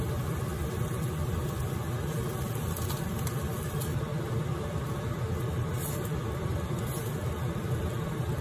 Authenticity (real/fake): real